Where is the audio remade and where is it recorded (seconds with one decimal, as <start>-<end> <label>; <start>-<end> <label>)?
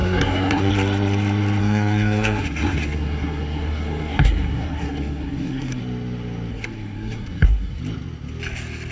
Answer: 0.0-0.7 remade; 0.7-1.6 recorded; 1.6-5.8 remade; 5.8-6.5 recorded; 6.5-7.8 remade; 7.8-8.9 recorded